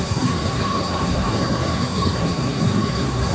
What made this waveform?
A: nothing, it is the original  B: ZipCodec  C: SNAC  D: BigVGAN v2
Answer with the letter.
C